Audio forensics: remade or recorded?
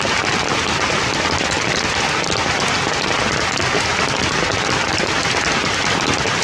recorded